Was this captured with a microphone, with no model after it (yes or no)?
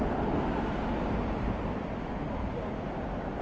yes